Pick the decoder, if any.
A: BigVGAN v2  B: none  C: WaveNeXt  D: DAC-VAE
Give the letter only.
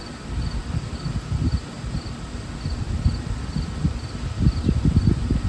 B